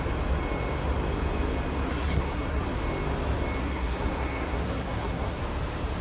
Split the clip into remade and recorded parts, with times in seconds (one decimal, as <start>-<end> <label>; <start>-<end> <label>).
0.0-1.9 recorded; 1.9-2.6 remade; 2.6-3.6 recorded; 3.6-5.4 remade; 5.4-6.0 recorded